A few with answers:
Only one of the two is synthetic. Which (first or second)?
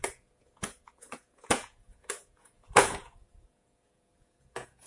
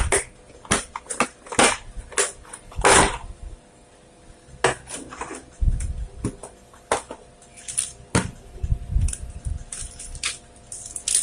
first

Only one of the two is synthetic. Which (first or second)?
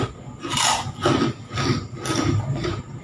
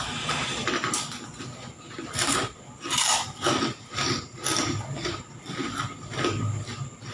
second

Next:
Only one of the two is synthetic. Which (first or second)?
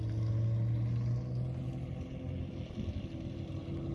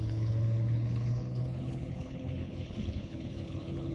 second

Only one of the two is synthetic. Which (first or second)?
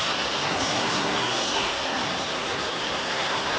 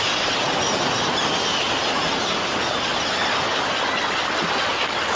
first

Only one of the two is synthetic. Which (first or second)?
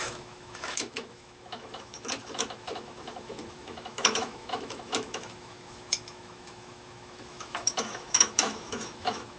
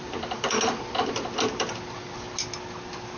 first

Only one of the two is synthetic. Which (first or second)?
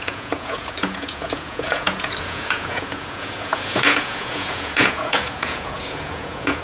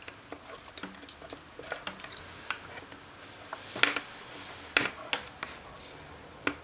first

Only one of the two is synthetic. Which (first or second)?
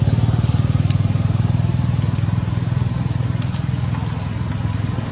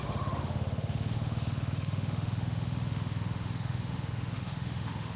second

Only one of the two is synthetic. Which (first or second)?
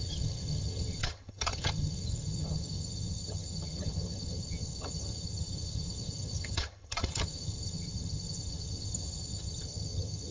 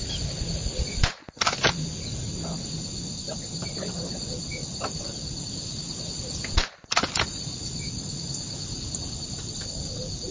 first